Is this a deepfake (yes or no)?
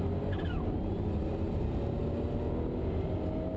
no